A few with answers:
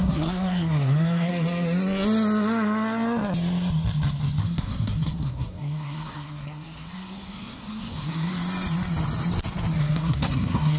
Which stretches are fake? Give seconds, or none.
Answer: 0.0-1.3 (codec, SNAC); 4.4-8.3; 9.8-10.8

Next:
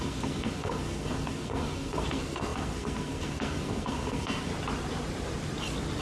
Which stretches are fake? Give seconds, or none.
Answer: 0.0-4.5 (codec, SNAC)

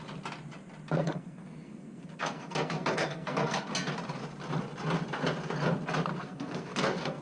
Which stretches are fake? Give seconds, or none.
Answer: 1.0-3.7 (codec, SNAC); 6.1-7.2

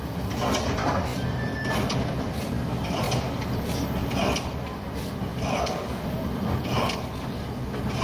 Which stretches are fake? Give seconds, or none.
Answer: 5.5-6.0 (codec, SNAC)